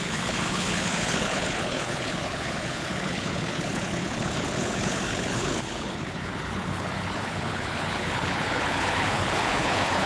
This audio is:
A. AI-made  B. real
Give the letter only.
A